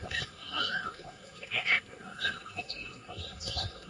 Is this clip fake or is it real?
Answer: fake